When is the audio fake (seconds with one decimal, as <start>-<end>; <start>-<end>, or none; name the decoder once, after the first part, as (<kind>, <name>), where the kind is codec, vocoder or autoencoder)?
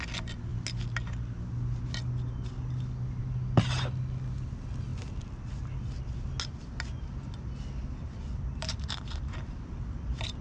none